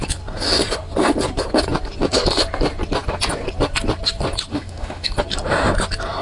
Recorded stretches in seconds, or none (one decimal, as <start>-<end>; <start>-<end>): 0.0-4.5; 5.1-6.2